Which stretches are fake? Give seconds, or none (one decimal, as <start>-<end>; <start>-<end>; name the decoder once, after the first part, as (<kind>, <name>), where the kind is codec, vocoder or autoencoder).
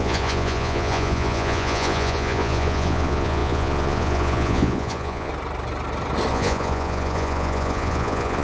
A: 0.0-5.3 (vocoder, Vocos); 6.3-8.4